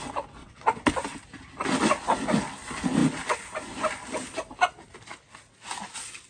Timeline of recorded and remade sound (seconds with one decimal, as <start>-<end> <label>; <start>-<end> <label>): 0.0-0.4 recorded; 0.4-0.9 remade; 0.9-6.3 recorded